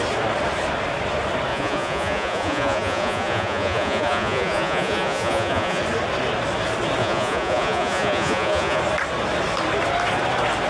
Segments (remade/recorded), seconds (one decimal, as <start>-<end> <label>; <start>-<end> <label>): 0.0-1.5 recorded; 1.5-5.8 remade; 5.8-7.0 recorded; 7.0-8.8 remade; 8.8-10.7 recorded